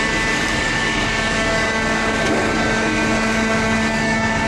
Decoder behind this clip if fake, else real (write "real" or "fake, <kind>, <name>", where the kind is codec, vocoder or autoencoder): fake, codec, DAC